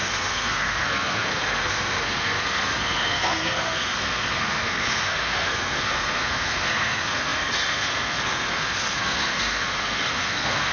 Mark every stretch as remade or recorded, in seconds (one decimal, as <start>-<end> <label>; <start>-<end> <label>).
0.0-10.7 remade